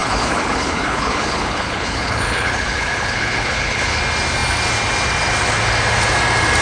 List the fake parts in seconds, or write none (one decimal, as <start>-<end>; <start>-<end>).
0.0-4.0